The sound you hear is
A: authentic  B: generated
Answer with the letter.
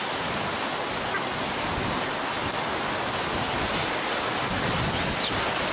A